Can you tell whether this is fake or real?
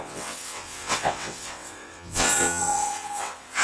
fake